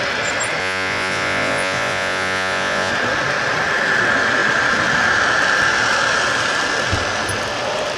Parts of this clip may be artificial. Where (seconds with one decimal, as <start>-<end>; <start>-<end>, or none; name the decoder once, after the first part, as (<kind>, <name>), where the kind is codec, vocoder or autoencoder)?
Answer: 0.6-2.9 (vocoder, Vocos)